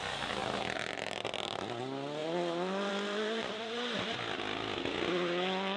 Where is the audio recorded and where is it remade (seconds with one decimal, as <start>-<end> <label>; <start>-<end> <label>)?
0.0-5.8 recorded